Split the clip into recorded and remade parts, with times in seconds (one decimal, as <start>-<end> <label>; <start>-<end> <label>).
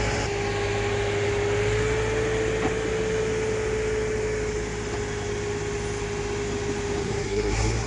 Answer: 0.0-7.0 recorded; 7.0-7.9 remade